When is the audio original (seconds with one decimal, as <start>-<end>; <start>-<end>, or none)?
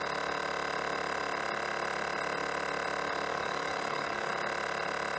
0.0-3.3; 4.3-5.2